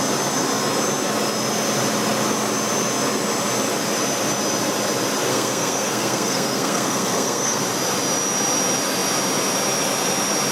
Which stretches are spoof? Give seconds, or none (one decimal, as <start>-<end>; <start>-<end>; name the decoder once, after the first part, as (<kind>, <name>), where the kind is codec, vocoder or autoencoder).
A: 5.3-7.6 (codec, SNAC)